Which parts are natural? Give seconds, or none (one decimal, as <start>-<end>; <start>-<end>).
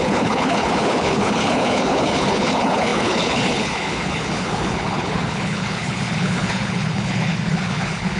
none